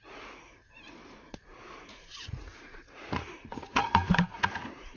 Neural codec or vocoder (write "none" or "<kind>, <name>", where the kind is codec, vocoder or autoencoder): vocoder, Vocos